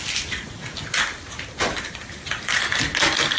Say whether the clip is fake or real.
real